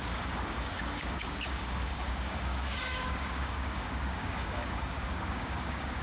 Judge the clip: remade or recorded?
remade